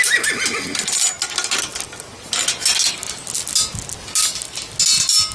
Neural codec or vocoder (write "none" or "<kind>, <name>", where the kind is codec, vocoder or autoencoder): none